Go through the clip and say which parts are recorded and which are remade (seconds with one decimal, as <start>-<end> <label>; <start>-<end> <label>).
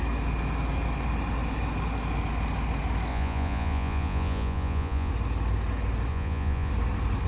0.0-3.1 recorded; 3.1-5.1 remade; 5.1-6.1 recorded; 6.1-6.7 remade; 6.7-7.3 recorded